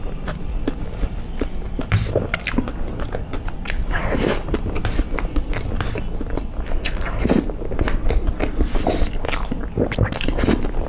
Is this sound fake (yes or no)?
no